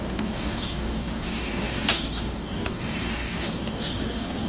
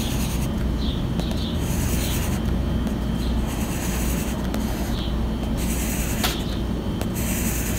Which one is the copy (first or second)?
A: first